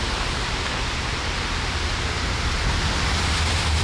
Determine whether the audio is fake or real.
fake